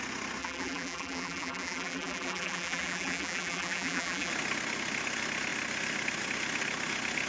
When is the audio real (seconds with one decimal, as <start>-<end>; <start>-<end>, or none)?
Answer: 0.0-0.4; 4.3-7.3